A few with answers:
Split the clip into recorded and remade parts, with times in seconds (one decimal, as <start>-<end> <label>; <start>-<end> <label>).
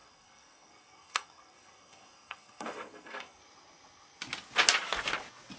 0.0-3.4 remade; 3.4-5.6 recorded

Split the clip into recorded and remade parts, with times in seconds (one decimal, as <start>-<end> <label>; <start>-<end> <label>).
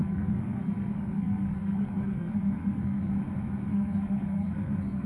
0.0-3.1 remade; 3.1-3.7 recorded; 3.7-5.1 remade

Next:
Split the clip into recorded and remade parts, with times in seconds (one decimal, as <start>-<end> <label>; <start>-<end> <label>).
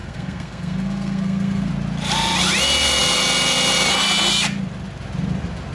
0.0-1.7 remade; 1.7-5.7 recorded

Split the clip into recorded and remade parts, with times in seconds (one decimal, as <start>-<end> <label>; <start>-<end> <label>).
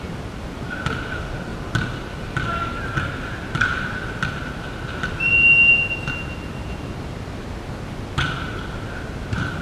0.0-9.6 recorded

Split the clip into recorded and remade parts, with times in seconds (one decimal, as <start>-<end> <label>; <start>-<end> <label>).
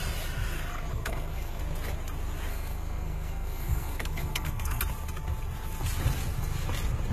0.0-0.9 recorded; 0.9-1.6 remade; 1.6-2.5 recorded; 2.5-4.8 remade; 4.8-7.1 recorded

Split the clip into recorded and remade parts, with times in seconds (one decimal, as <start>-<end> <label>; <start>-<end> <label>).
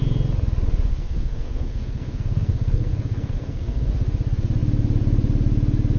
0.0-0.9 recorded; 0.9-3.9 remade; 3.9-6.0 recorded